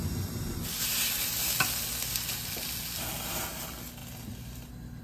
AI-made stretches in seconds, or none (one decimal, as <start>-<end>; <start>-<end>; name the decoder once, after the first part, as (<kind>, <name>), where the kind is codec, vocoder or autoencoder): none

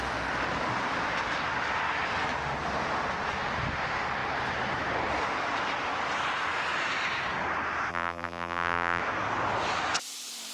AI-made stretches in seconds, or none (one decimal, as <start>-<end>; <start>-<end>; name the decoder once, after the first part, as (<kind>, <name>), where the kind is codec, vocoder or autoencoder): 7.9-9.0 (vocoder, BigVGAN v2)

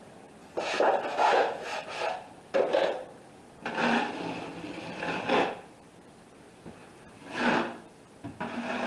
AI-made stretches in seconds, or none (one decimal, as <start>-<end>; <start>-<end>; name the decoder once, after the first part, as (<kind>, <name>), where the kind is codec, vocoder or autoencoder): 1.4-6.3 (vocoder, BigVGAN v2); 6.8-7.4